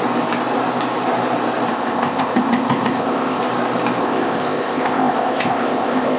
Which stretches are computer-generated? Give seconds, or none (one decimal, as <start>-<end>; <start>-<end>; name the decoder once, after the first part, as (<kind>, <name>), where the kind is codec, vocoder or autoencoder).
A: 1.7-3.4 (codec, ZipCodec); 4.0-6.2